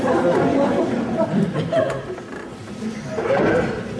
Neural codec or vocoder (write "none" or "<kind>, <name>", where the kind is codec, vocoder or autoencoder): vocoder, BigVGAN v2